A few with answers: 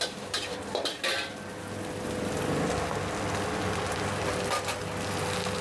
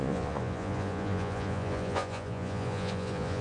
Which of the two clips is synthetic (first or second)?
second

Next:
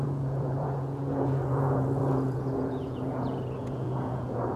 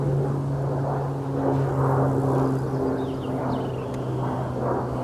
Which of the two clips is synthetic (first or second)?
first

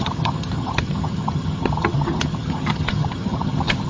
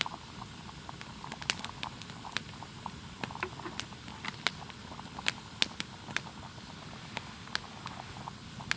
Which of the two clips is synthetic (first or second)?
first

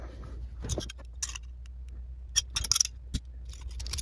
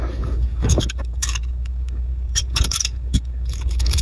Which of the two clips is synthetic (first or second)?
second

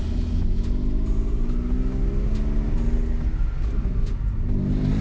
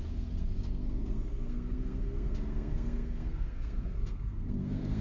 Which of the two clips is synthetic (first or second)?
second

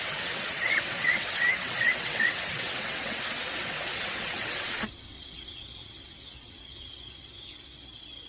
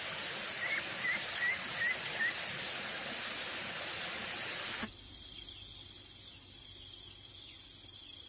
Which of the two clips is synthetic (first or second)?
first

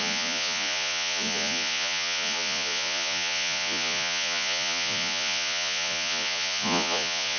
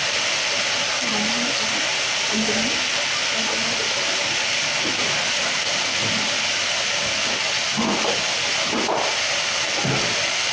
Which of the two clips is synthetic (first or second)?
first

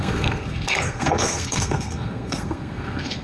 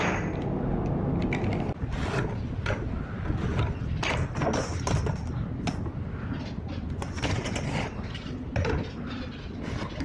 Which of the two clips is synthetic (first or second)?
first